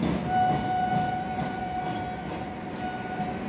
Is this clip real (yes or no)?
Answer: yes